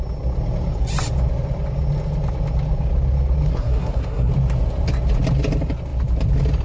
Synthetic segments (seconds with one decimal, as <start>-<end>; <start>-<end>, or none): 3.5-4.3